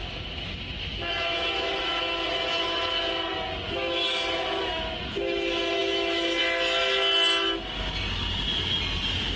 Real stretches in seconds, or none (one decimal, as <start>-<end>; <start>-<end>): 0.0-4.0; 4.8-9.4